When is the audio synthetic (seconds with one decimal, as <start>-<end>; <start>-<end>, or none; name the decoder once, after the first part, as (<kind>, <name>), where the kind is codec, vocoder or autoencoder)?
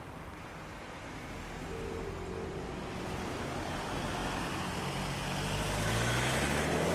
none